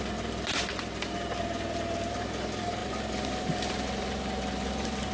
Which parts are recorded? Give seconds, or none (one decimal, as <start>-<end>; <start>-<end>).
0.0-5.1

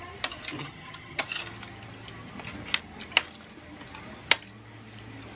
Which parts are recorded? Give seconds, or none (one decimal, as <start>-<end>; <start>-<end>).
0.0-0.6; 1.2-5.4